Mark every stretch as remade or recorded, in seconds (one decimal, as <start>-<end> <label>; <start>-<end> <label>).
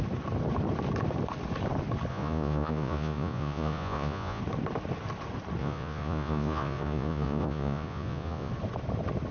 0.0-2.1 recorded; 2.1-4.4 remade; 4.4-5.6 recorded; 5.6-8.5 remade; 8.5-9.3 recorded